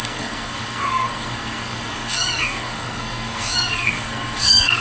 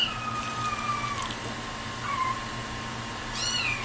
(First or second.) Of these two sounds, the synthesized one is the first